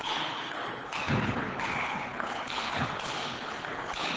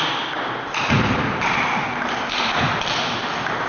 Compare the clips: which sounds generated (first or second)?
first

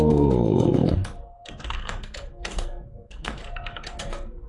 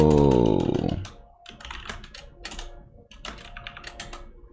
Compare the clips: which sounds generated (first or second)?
first